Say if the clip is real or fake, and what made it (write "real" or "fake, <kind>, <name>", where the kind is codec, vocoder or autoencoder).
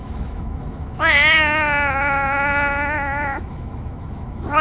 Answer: fake, autoencoder, DAC-VAE